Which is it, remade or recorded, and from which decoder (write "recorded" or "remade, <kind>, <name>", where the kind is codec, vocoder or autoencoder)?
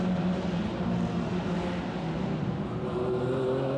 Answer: recorded